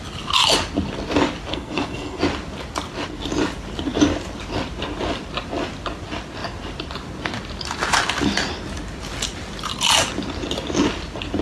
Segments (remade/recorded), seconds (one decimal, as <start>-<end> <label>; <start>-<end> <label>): 0.0-1.5 recorded; 1.5-2.2 remade; 2.2-11.4 recorded